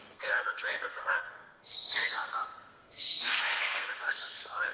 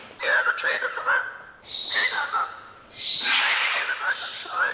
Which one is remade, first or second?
first